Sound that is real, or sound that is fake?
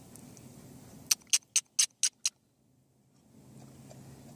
real